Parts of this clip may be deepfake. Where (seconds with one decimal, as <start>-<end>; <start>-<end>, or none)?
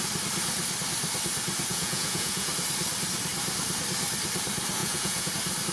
1.7-2.5; 4.8-5.3